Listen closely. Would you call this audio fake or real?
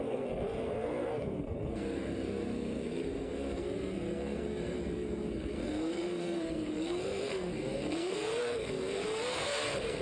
fake